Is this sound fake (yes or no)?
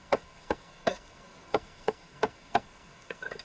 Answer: yes